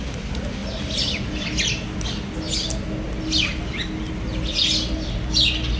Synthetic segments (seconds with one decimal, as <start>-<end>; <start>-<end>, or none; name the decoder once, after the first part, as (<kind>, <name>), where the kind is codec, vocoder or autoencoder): none